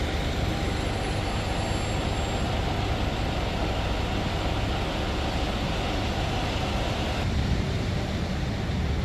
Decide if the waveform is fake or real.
real